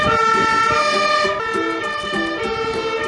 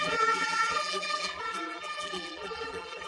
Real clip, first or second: first